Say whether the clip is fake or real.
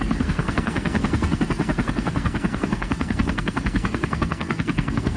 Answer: fake